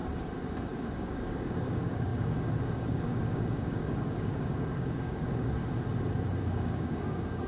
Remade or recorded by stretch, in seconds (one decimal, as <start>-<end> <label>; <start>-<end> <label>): 0.0-0.8 recorded; 0.8-5.6 remade; 5.6-6.4 recorded; 6.4-7.5 remade